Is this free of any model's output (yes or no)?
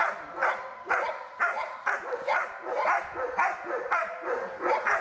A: no